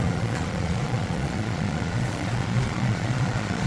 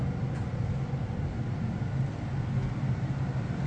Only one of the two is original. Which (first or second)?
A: second